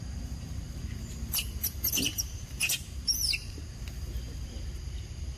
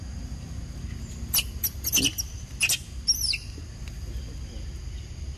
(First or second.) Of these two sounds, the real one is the second